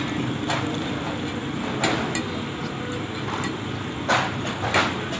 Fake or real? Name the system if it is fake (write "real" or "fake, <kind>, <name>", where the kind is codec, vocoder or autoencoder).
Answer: real